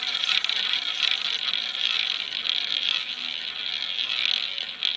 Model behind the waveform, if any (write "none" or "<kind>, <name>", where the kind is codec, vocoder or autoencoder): none